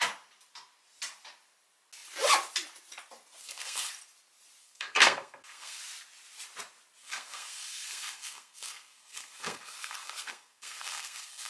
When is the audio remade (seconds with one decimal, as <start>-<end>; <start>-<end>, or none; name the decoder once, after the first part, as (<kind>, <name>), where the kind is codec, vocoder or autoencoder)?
3.4-3.9 (codec, SNAC); 4.6-5.8; 7.0-11.5